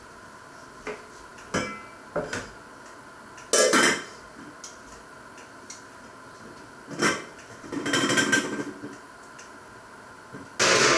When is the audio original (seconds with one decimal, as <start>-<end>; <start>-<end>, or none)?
0.0-11.0